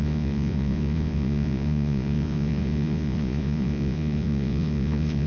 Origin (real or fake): fake